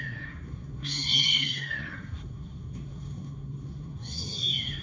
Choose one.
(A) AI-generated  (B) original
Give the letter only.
A